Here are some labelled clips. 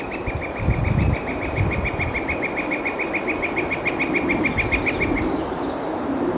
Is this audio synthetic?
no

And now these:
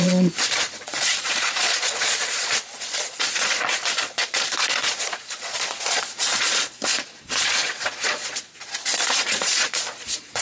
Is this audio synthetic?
yes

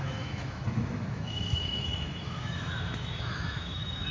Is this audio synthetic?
yes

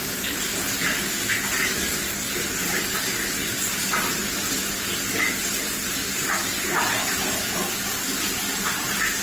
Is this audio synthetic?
yes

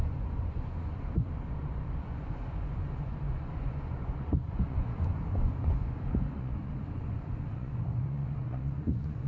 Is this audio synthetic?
yes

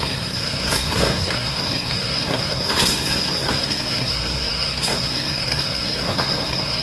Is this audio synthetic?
yes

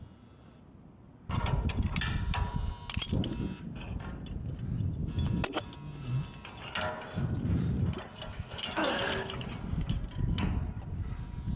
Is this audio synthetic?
no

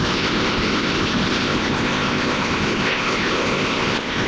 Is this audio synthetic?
yes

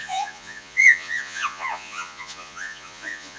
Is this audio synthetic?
yes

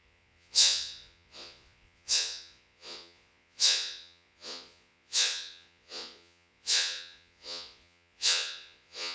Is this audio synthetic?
yes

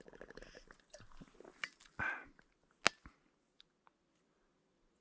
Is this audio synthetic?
no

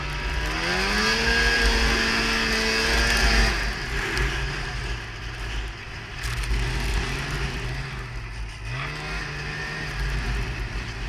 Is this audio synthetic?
no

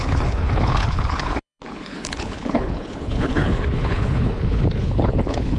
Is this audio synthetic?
yes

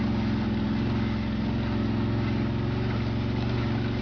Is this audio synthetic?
no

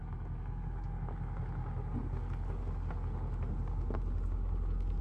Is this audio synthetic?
no